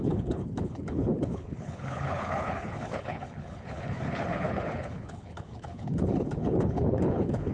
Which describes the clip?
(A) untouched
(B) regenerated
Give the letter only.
B